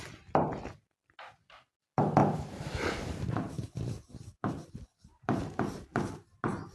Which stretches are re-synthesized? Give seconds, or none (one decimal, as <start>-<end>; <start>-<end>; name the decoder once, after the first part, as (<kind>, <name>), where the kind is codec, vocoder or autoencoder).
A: 2.2-4.5 (vocoder, BigVGAN v2); 4.9-5.7